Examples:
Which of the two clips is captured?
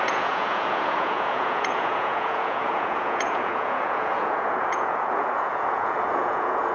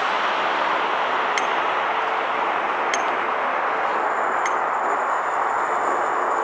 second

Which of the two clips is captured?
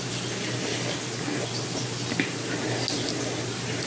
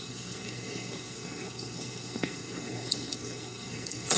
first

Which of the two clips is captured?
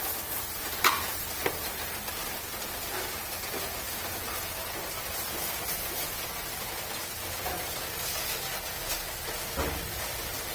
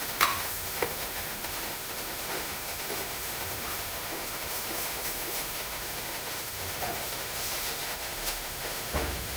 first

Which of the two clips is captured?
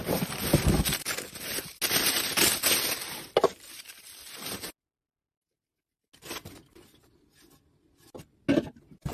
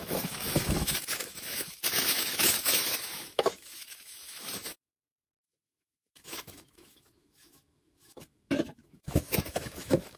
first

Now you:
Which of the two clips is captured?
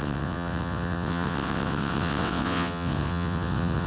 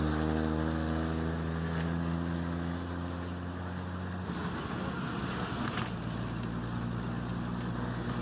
second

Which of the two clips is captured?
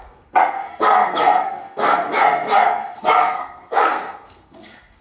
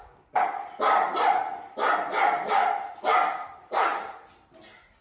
second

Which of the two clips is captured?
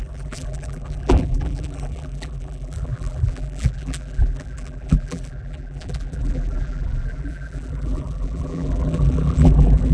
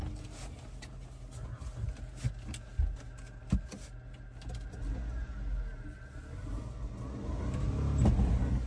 second